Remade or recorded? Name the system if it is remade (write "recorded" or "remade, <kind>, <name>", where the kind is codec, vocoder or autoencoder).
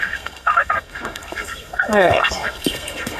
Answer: remade, codec, SNAC